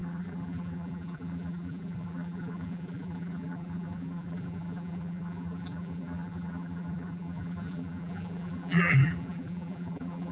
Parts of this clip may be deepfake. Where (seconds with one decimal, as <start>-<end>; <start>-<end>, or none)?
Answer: 0.0-10.3